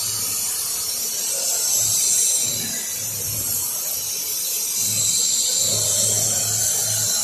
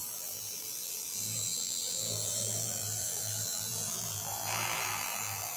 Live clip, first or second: first